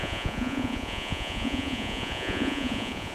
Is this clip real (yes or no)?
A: no